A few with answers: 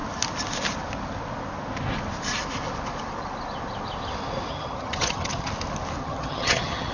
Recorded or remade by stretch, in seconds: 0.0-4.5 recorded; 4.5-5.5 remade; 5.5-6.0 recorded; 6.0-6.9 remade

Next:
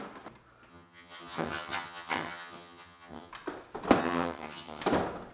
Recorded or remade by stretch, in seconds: 0.0-0.7 recorded; 0.7-3.3 remade; 3.3-4.0 recorded; 4.0-4.8 remade; 4.8-5.3 recorded

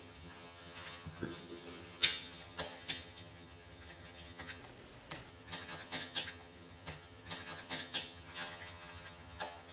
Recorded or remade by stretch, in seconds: 0.0-4.6 remade; 4.6-5.3 recorded; 5.3-9.7 remade

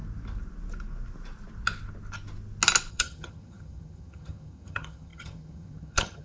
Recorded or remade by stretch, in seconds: 0.0-2.9 recorded; 2.9-6.2 remade

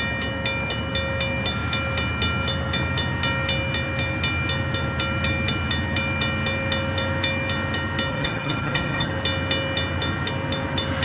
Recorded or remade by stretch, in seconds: 0.0-8.1 recorded; 8.1-9.1 remade; 9.1-11.0 recorded